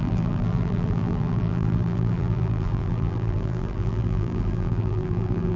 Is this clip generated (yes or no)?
yes